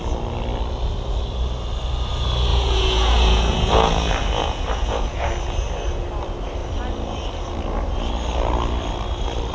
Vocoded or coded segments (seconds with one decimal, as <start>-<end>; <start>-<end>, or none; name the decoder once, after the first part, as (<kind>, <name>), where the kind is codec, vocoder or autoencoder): 2.5-5.3 (vocoder, Vocos)